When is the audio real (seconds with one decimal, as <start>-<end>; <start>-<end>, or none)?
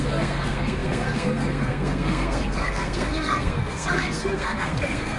none